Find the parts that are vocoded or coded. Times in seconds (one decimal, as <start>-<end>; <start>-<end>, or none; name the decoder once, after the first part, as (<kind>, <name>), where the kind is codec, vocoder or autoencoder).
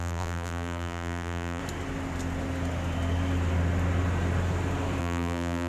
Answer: 0.0-1.6 (vocoder, BigVGAN v2); 5.0-5.7